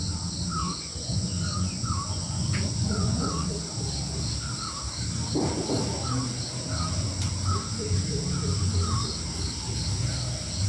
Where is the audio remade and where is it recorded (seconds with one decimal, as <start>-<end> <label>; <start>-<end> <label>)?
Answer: 0.0-0.6 recorded; 0.6-3.5 remade; 3.5-10.7 recorded